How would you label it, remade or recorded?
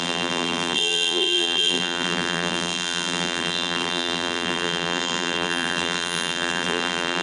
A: remade